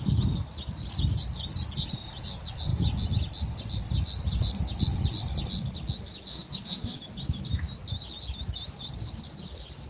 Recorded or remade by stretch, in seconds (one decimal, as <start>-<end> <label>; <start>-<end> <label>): 0.0-6.3 recorded; 6.3-7.0 remade; 7.0-9.9 recorded